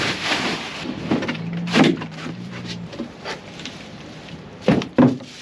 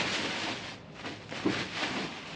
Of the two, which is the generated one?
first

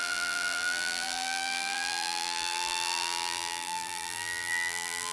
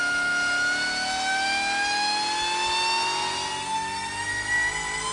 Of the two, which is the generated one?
first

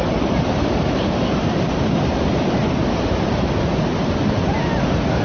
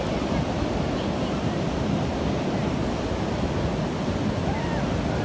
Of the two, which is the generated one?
first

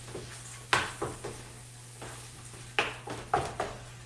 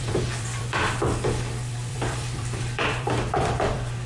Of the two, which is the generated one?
second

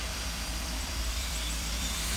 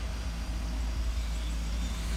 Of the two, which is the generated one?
first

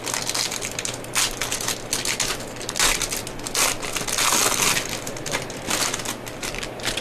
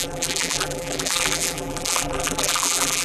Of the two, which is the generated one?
second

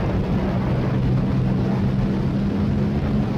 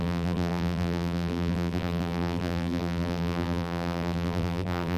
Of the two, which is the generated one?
second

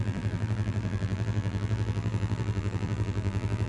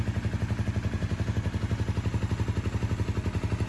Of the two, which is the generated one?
first